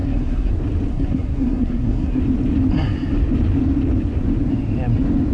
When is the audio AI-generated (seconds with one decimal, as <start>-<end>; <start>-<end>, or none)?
0.0-0.5; 0.9-2.2